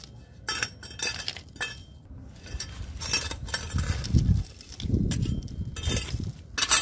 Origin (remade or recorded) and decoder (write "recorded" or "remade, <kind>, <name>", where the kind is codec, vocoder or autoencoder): recorded